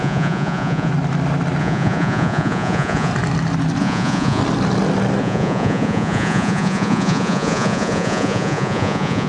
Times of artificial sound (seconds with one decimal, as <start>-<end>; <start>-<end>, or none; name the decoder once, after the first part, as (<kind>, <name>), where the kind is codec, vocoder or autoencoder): 0.0-0.9 (vocoder, Vocos); 1.6-3.1; 3.8-4.4; 5.2-9.3